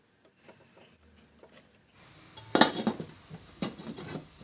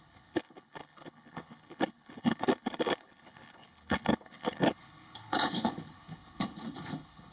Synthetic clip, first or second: second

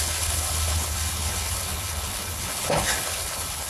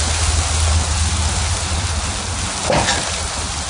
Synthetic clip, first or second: first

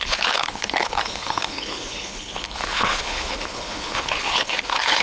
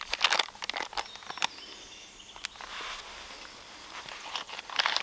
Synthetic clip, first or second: first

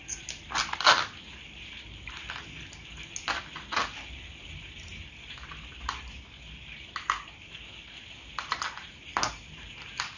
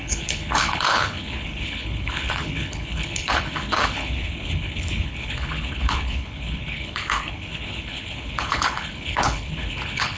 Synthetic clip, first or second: second